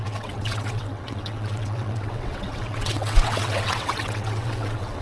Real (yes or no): no